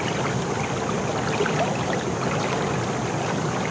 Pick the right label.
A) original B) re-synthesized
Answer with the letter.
A